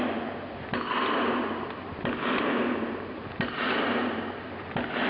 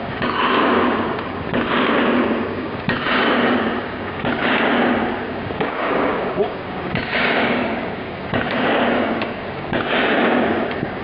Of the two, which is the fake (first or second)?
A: second